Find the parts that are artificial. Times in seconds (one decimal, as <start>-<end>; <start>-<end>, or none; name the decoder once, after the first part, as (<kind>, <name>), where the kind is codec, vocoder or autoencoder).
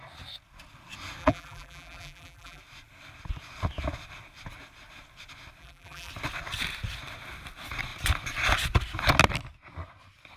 1.2-2.6 (vocoder, BigVGAN v2); 5.6-6.1